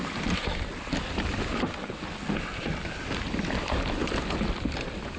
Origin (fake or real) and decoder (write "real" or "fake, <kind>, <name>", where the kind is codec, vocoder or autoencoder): real